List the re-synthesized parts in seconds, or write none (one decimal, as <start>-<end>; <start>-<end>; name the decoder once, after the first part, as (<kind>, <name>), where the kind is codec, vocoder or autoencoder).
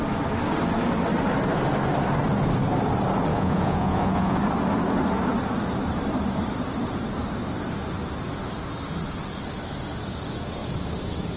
3.3-4.4 (vocoder, Vocos)